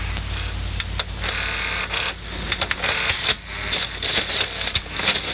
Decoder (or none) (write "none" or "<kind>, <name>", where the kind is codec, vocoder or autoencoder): none